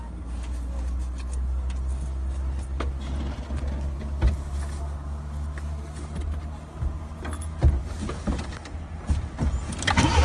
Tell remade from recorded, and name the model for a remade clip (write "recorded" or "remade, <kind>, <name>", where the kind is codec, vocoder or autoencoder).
recorded